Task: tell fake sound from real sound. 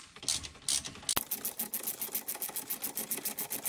real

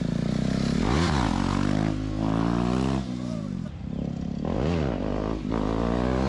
real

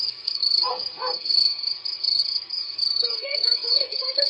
fake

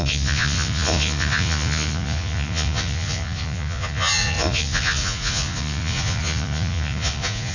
fake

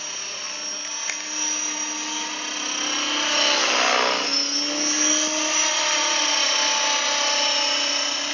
real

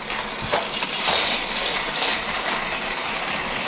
real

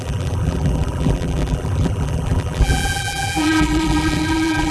fake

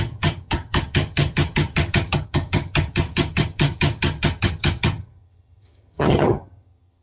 fake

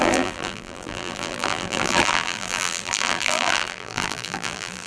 fake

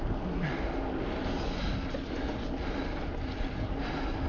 real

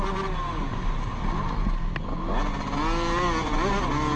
real